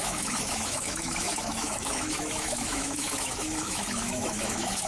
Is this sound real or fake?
fake